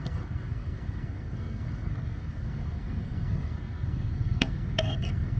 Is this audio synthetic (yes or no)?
yes